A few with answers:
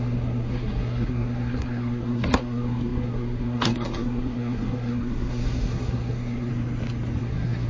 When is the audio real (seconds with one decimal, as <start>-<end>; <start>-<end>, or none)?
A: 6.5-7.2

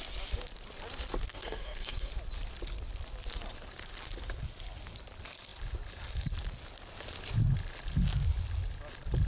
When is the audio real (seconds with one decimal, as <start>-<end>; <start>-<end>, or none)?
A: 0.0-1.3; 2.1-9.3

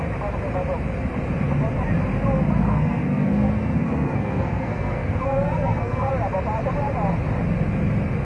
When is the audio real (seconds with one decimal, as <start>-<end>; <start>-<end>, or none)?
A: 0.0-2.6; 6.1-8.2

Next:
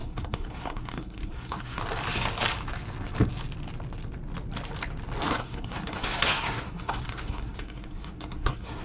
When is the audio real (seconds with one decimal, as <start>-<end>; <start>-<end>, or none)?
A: 1.8-5.3

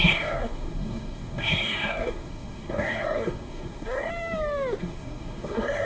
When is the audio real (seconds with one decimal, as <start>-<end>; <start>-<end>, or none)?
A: 4.1-4.8